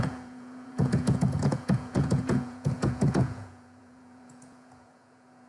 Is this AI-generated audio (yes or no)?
yes